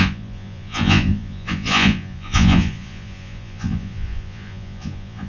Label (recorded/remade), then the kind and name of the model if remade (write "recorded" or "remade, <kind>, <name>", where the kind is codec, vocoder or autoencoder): remade, vocoder, Vocos